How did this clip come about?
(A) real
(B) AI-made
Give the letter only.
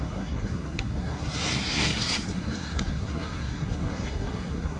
B